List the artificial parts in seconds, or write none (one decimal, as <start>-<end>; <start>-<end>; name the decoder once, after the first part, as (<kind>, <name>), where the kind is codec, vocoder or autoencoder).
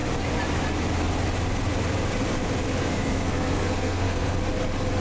2.8-4.4 (codec, SNAC)